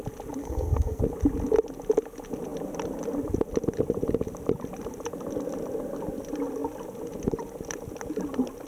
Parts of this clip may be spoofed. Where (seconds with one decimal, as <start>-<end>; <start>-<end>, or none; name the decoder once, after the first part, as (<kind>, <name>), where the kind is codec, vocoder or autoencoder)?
0.4-1.0 (codec, SNAC)